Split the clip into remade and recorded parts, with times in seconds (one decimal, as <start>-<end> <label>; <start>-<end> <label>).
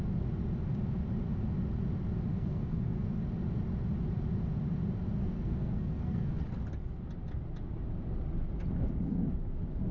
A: 0.0-2.3 recorded; 2.3-3.1 remade; 3.1-5.2 recorded; 5.2-6.3 remade; 6.3-9.9 recorded